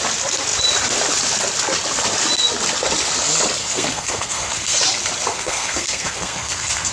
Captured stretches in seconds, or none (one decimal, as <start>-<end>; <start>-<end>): 0.0-3.6; 4.8-5.3